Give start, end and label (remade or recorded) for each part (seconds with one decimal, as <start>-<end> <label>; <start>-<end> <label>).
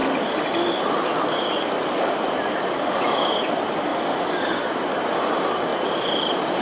0.0-5.7 recorded; 5.7-6.6 remade